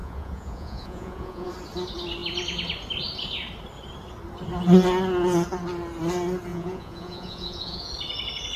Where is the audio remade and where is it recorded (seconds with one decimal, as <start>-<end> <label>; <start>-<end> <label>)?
0.0-1.5 remade; 1.5-6.5 recorded; 6.5-7.9 remade; 7.9-8.6 recorded